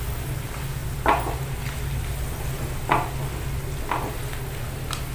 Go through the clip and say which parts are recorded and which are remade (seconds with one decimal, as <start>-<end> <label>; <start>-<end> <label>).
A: 0.0-5.1 recorded